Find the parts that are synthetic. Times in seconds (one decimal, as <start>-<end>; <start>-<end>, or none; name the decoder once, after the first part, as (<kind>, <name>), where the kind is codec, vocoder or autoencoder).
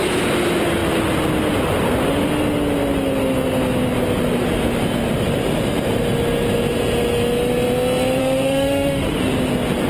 8.2-9.2 (autoencoder, DAC-VAE)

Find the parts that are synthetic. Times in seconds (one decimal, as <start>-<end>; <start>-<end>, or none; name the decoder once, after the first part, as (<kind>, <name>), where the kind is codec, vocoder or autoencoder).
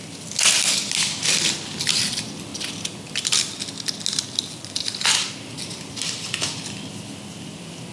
none